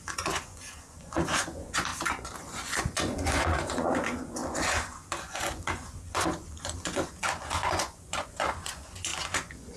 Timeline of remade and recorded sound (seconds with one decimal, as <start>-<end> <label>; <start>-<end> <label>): 0.0-1.9 remade; 1.9-2.4 recorded; 2.4-9.8 remade